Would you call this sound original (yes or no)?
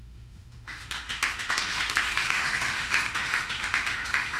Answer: no